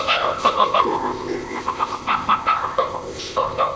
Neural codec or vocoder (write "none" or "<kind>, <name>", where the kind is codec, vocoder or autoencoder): codec, ZipCodec